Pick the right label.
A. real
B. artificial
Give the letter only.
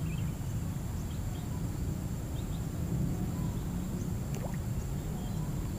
A